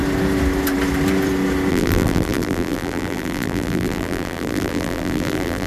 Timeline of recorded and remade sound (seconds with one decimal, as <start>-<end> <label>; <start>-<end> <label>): 0.0-1.7 recorded; 1.7-5.7 remade